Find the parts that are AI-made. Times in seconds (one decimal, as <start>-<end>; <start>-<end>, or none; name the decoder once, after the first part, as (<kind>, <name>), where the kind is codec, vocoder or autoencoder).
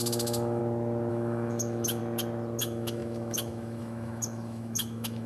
0.0-0.6 (autoencoder, DAC-VAE); 1.1-2.0; 2.6-5.3